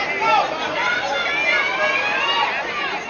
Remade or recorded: recorded